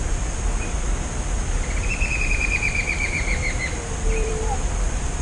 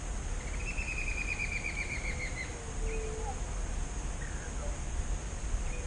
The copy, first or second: first